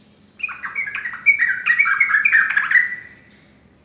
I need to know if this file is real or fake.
real